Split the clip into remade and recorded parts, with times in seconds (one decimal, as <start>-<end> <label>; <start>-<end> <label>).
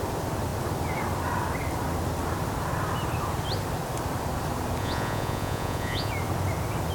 0.0-4.8 recorded; 4.8-6.1 remade; 6.1-6.9 recorded